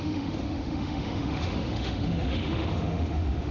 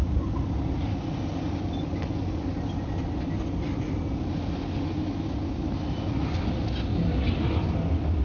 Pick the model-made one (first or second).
first